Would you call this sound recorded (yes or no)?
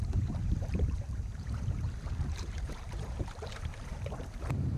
no